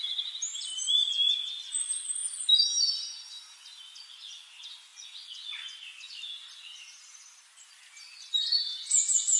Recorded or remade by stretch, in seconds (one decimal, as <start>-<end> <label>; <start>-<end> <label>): 0.0-4.9 recorded; 4.9-6.2 remade; 6.2-9.4 recorded